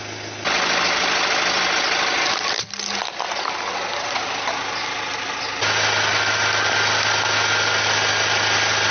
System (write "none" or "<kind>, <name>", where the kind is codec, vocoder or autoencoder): none